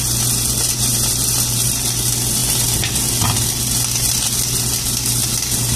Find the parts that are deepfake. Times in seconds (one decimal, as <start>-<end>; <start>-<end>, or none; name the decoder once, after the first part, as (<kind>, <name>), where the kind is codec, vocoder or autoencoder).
2.4-3.6 (vocoder, BigVGAN v2)